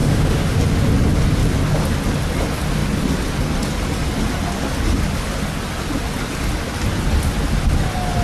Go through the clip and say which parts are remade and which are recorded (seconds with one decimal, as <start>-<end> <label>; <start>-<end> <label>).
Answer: 0.0-0.6 remade; 0.6-8.2 recorded